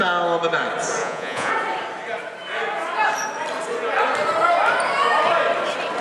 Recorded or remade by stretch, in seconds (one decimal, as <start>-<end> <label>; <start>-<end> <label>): 0.0-1.0 recorded; 1.0-1.5 remade; 1.5-6.0 recorded

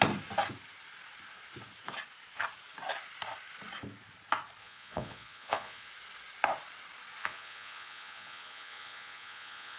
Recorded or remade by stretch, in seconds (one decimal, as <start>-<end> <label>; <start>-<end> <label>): 0.0-4.6 recorded; 4.6-5.9 remade; 5.9-7.2 recorded; 7.2-9.8 remade

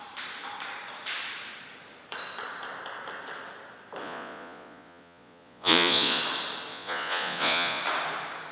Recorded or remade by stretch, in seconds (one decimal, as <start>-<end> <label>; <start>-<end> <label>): 0.0-4.0 recorded; 4.0-6.2 remade; 6.2-6.7 recorded; 6.7-7.8 remade; 7.8-8.5 recorded

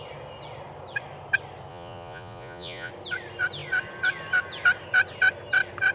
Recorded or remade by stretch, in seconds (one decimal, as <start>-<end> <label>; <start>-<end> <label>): 0.0-1.7 recorded; 1.7-2.9 remade; 2.9-5.9 recorded

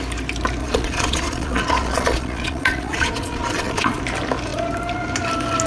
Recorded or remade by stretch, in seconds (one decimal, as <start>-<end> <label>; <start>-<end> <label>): 0.0-0.6 recorded; 0.6-4.0 remade; 4.0-5.7 recorded

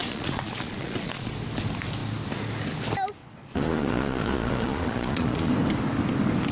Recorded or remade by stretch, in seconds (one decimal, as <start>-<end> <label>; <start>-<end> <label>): 0.0-1.3 remade; 1.3-3.2 recorded; 3.2-5.5 remade; 5.5-6.5 recorded